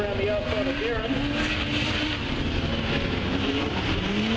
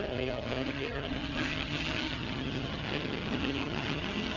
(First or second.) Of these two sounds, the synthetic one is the second